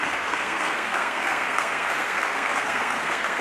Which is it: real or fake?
fake